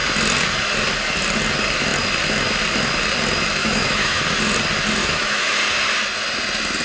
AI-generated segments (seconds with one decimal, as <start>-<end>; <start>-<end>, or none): 3.6-4.2; 5.0-5.6